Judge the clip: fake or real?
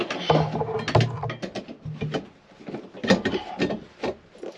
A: real